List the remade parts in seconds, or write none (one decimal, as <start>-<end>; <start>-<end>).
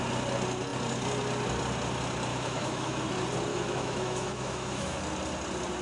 2.3-3.0; 3.5-5.0